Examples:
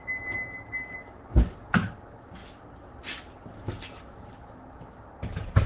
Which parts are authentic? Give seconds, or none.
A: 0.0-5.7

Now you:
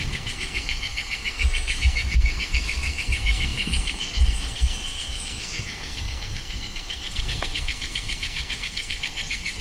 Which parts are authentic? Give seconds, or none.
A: none

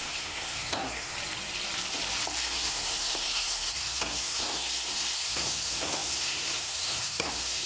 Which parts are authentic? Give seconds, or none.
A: 1.1-2.4